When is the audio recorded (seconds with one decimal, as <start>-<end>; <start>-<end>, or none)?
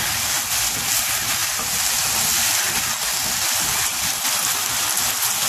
0.0-5.5